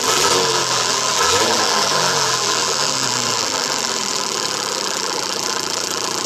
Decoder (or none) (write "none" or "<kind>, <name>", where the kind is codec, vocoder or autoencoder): vocoder, BigVGAN v2